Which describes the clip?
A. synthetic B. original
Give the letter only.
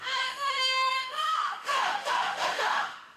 A